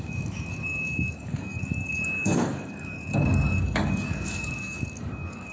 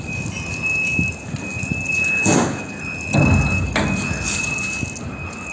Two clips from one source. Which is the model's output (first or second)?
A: first